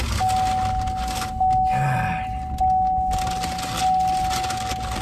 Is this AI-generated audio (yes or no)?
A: no